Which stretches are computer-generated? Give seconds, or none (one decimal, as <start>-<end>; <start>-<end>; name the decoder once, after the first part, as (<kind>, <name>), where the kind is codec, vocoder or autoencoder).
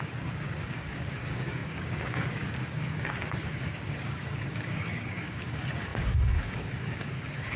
0.0-7.6 (codec, DAC)